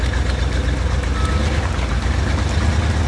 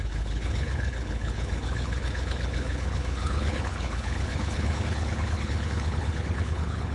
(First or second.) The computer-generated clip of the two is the second